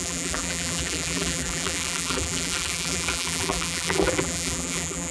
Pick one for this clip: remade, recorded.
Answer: remade